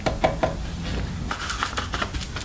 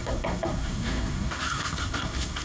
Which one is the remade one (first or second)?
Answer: second